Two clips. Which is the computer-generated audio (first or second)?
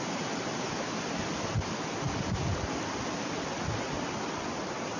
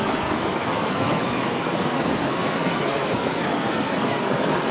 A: second